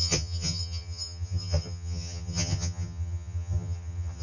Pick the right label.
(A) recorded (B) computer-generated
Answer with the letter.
B